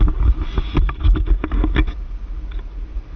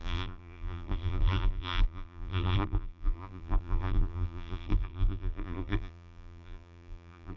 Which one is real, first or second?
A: first